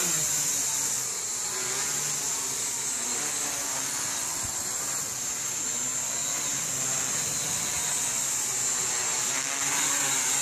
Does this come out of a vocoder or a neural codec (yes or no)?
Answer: no